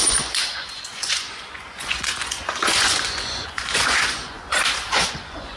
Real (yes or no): no